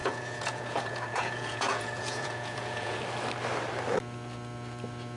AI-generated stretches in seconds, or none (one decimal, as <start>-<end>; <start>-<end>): 0.0-3.0